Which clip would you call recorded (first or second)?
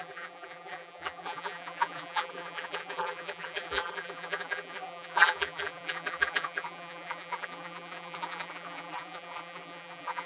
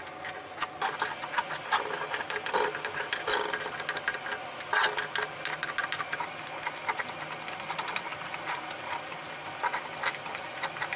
second